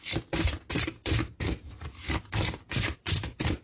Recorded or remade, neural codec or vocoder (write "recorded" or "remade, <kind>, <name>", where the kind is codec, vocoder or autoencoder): remade, vocoder, BigVGAN v2